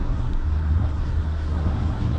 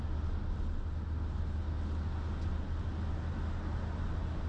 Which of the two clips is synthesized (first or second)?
first